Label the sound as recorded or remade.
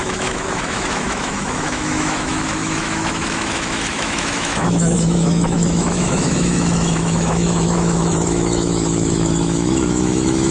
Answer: remade